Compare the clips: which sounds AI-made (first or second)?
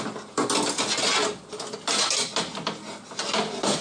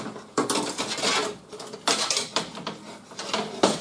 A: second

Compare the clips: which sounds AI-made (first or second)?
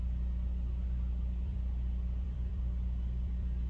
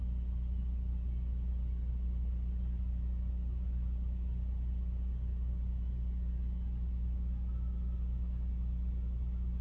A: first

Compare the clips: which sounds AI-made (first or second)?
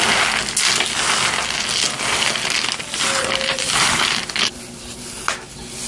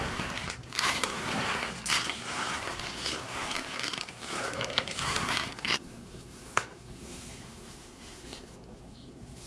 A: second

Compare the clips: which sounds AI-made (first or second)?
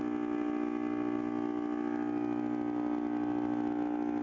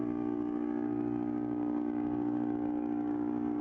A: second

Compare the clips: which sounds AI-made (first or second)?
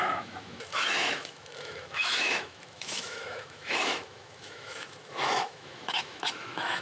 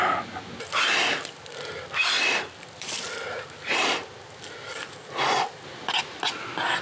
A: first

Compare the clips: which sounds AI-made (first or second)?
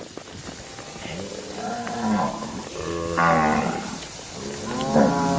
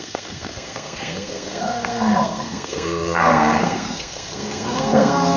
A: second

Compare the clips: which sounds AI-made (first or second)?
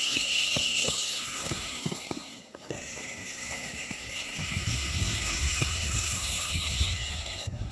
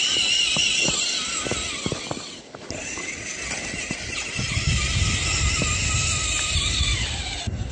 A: first